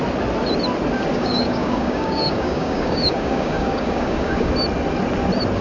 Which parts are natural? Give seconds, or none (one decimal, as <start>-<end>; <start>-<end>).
0.0-1.1; 4.5-5.6

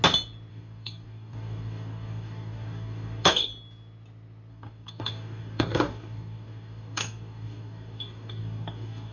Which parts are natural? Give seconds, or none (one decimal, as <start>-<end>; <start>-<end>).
0.0-0.5; 3.5-4.5